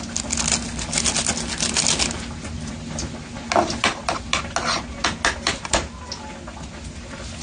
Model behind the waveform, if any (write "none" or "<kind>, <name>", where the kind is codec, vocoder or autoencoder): none